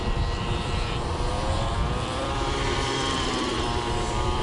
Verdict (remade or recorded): remade